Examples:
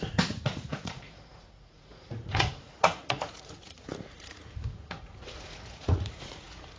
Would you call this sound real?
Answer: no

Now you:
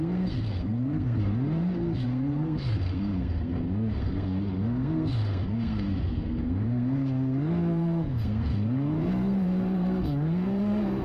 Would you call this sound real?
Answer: no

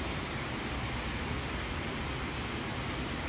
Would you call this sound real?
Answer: yes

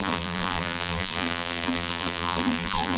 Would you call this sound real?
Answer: no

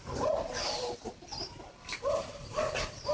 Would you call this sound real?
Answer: no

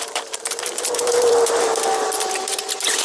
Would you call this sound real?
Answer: no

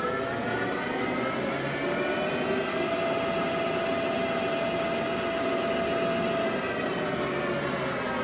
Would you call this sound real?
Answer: yes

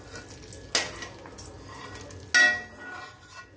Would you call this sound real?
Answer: yes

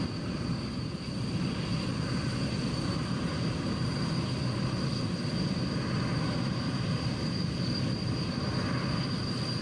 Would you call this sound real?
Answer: yes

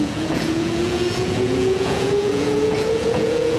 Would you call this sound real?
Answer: no